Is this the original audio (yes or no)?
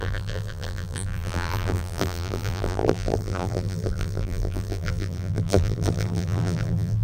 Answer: no